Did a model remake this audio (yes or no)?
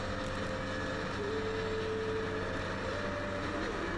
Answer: no